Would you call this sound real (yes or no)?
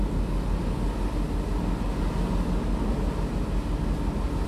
yes